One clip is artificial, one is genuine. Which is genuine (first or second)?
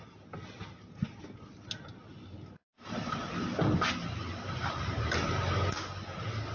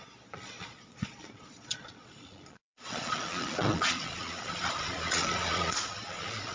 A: first